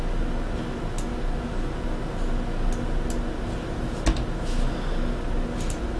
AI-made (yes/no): no